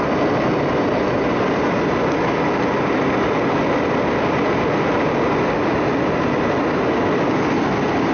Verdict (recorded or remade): recorded